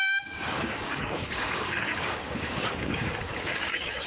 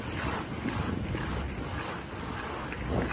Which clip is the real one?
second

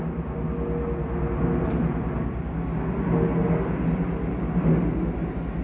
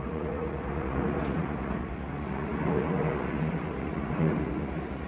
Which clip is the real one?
first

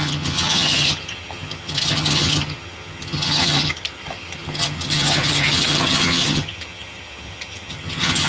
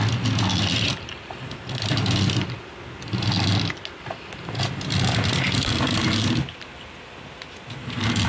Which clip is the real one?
second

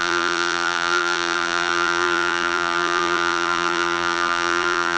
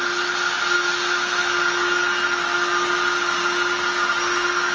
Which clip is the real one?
second